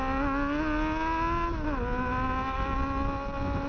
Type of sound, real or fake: real